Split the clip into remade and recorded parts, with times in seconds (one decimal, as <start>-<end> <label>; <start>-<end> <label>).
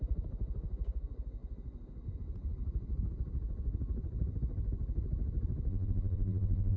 0.0-5.7 recorded; 5.7-6.8 remade